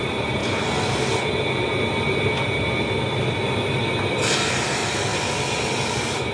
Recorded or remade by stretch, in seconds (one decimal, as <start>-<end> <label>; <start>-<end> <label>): 0.0-0.4 remade; 0.4-4.2 recorded; 4.2-4.8 remade; 4.8-6.3 recorded